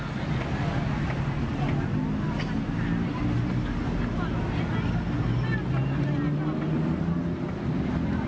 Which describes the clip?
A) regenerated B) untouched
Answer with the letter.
B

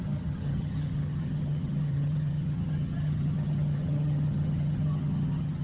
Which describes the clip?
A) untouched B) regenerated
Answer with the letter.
B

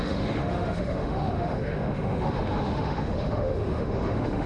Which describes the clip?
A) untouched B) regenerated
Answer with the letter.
B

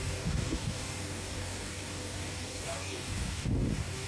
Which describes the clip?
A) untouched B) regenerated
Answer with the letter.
B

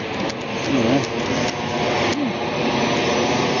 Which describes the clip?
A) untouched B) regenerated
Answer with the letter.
A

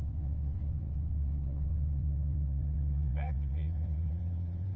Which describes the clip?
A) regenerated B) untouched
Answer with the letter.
A